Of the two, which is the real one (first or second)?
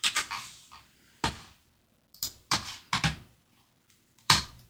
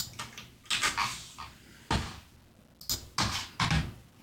second